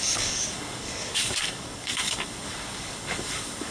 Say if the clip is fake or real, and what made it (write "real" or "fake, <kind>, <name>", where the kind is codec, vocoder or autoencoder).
fake, codec, DAC